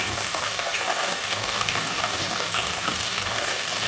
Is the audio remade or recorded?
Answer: remade